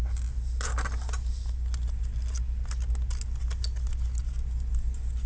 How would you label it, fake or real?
real